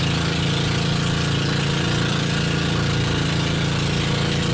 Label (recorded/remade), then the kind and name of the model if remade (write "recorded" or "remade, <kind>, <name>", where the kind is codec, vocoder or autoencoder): recorded